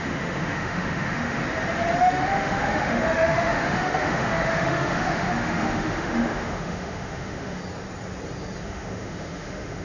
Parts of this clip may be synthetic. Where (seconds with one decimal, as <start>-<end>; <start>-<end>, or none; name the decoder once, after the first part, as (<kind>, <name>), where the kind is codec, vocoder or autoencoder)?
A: 0.0-1.4 (autoencoder, DAC-VAE); 2.0-7.6; 8.6-9.8